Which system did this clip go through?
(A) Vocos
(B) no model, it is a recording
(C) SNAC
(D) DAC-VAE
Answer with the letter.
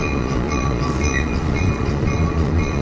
A